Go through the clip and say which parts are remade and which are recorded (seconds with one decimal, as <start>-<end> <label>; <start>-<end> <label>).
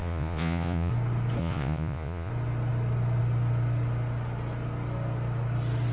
0.0-0.9 remade; 0.9-1.4 recorded; 1.4-2.3 remade; 2.3-5.9 recorded